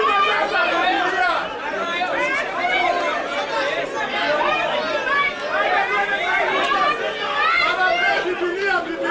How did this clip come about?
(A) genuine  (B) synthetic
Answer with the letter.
A